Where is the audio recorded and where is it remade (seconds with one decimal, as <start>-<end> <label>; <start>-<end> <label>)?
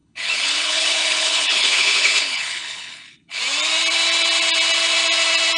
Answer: 0.0-3.4 remade; 3.4-5.6 recorded